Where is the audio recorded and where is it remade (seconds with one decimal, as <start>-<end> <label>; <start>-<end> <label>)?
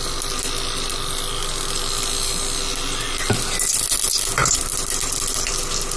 0.0-6.0 recorded